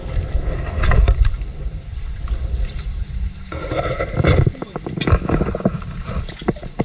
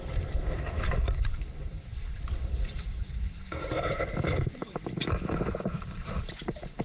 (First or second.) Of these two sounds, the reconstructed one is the second